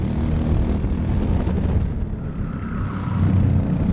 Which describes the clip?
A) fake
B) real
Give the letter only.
B